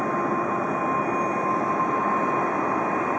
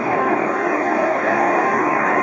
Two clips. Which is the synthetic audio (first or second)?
second